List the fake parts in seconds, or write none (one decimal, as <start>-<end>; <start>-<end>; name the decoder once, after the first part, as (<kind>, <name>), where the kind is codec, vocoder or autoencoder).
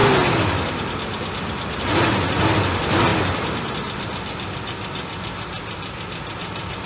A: none